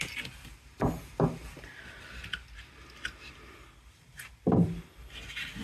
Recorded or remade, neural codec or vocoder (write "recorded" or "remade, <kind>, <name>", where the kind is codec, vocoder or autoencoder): recorded